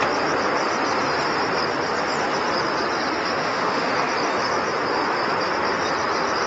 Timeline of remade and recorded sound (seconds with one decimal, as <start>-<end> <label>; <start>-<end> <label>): 0.0-3.4 recorded; 3.4-3.9 remade; 3.9-6.5 recorded